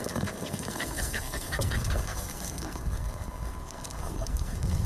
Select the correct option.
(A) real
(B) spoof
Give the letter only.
B